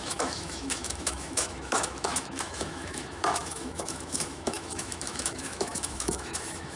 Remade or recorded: remade